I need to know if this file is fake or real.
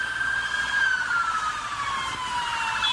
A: real